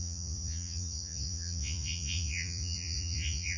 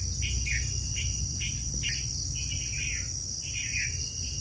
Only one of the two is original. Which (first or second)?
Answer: second